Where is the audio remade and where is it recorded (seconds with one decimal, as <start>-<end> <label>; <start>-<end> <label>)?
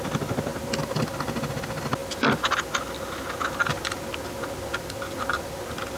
0.0-6.0 recorded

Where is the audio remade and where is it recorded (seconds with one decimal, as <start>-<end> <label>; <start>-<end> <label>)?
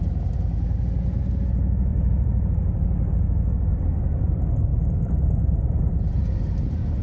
0.0-1.9 recorded; 1.9-3.1 remade; 3.1-3.7 recorded; 3.7-4.3 remade; 4.3-4.7 recorded; 4.7-6.2 remade; 6.2-7.0 recorded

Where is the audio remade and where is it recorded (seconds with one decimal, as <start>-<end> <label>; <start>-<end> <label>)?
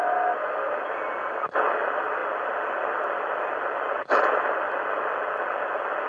0.0-2.2 recorded; 2.2-5.1 remade; 5.1-6.1 recorded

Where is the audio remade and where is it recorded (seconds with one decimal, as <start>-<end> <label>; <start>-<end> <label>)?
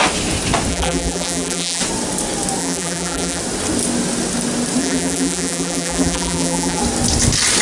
0.0-0.7 recorded; 0.7-1.8 remade; 1.8-2.6 recorded; 2.6-3.4 remade; 3.4-4.8 recorded; 4.8-6.8 remade; 6.8-7.6 recorded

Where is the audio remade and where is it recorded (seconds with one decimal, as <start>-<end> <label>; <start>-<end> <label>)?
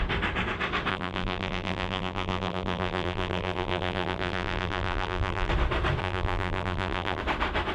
0.0-0.9 recorded; 0.9-5.5 remade; 5.5-6.0 recorded; 6.0-7.2 remade; 7.2-7.7 recorded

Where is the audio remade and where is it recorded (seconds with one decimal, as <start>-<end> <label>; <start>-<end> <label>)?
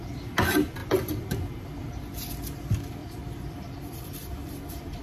0.0-3.0 recorded; 3.0-5.0 remade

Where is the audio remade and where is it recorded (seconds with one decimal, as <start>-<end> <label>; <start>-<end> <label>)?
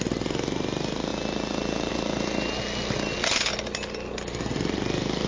0.0-5.3 recorded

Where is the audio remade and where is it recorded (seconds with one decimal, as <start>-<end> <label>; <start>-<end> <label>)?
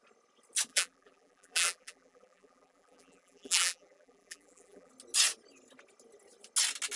0.0-0.7 recorded; 0.7-4.9 remade; 4.9-7.0 recorded